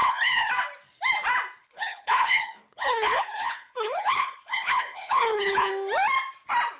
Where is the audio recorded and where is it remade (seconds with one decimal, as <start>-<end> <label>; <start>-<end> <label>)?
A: 0.0-0.5 remade; 0.5-1.6 recorded; 1.6-5.7 remade; 5.7-6.8 recorded